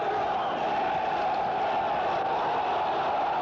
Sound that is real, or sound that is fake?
real